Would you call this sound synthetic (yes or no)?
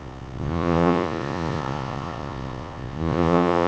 yes